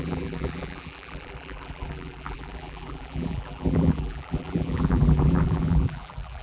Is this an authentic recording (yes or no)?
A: no